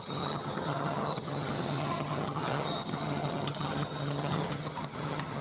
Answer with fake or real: fake